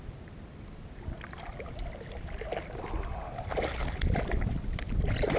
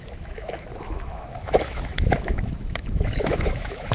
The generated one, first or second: second